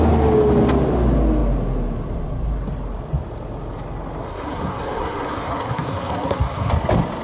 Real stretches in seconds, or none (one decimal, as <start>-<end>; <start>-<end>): 0.0-4.2; 6.7-7.2